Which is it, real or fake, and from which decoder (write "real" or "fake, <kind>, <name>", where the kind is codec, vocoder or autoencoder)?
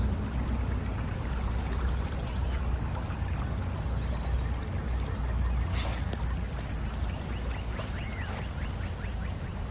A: real